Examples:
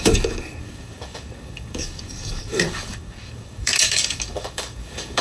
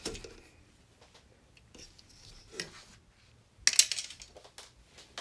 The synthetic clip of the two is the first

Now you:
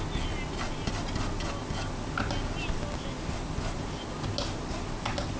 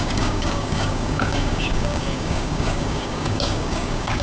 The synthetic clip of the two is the second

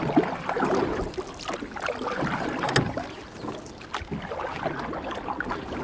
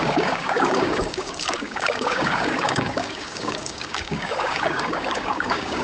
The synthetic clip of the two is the second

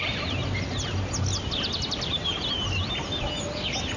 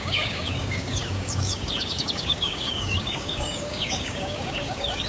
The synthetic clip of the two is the second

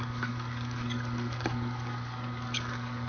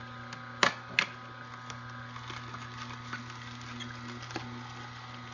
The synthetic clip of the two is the first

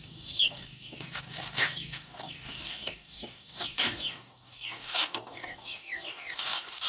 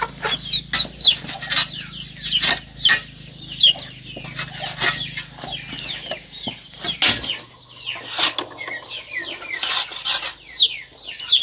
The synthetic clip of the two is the first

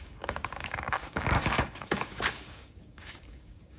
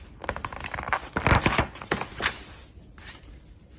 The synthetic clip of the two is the first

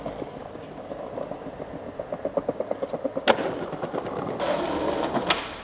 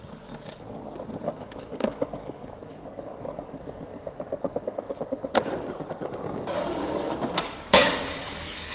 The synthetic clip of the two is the second